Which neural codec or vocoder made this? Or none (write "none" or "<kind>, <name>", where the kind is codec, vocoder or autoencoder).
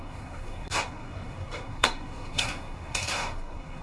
codec, SNAC